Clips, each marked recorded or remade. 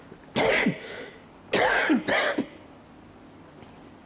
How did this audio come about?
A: recorded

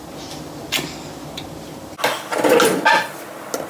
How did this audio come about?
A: recorded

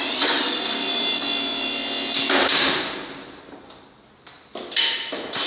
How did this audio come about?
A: recorded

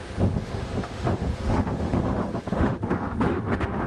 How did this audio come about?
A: remade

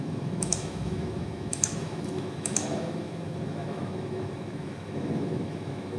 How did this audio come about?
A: remade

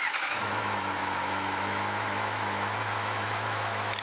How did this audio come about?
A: remade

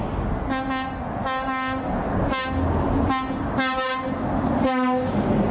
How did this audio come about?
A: recorded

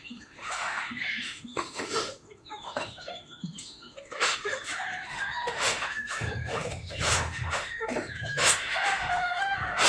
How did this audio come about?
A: remade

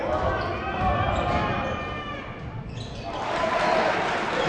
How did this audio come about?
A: recorded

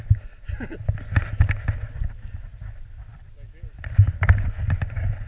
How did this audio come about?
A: recorded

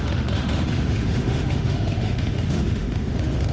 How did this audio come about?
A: remade